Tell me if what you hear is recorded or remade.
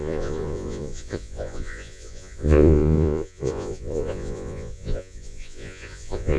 remade